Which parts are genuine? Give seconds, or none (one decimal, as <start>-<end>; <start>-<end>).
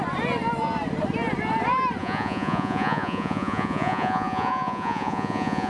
0.0-2.0